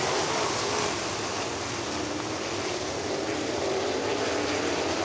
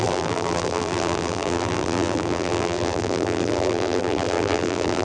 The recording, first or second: first